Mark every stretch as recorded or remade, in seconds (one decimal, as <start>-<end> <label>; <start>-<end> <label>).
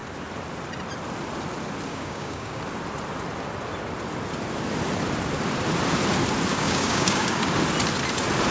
0.0-1.9 recorded; 1.9-2.6 remade; 2.6-6.5 recorded; 6.5-7.5 remade; 7.5-8.5 recorded